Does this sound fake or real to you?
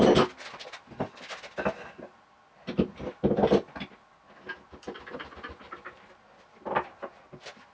real